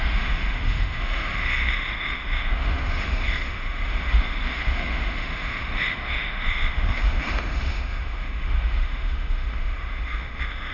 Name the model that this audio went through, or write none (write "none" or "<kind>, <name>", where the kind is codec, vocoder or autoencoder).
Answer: autoencoder, DAC-VAE